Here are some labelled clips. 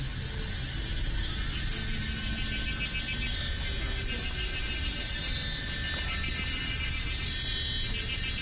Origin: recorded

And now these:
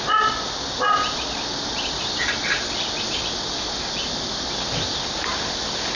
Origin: recorded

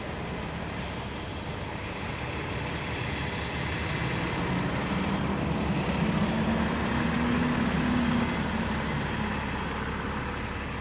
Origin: recorded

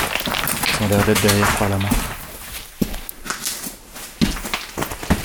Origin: recorded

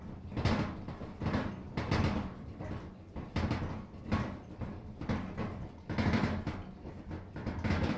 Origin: recorded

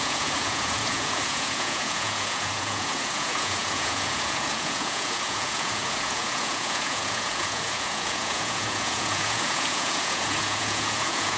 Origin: remade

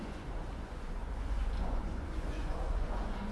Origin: remade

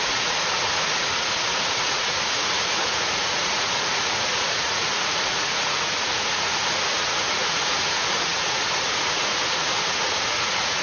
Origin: remade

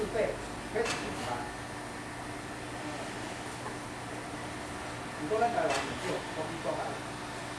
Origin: recorded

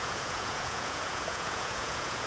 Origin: remade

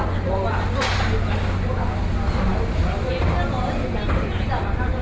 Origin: recorded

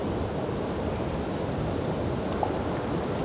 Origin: recorded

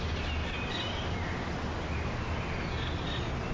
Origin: recorded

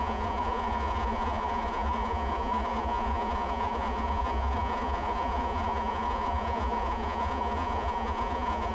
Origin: remade